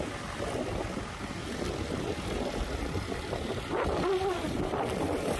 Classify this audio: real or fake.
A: real